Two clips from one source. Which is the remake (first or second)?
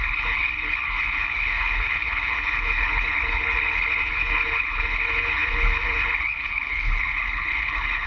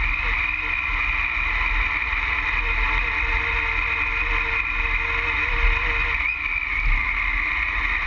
first